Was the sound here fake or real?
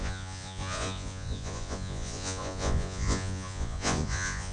fake